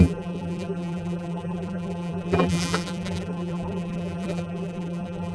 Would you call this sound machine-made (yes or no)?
yes